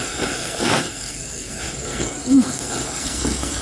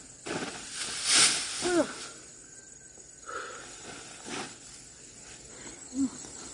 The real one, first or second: second